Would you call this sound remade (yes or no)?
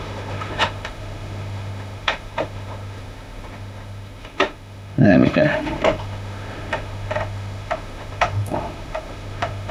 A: yes